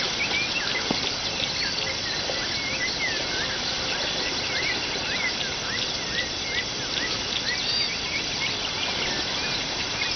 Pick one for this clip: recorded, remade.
recorded